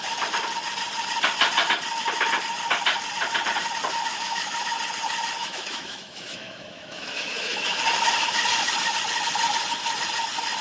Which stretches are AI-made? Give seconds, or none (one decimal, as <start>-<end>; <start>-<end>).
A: 4.1-4.7; 5.4-7.8